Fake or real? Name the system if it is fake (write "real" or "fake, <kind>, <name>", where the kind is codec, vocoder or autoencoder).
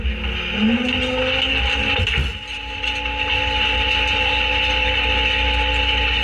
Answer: real